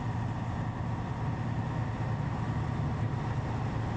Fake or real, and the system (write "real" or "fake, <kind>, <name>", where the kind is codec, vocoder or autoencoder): real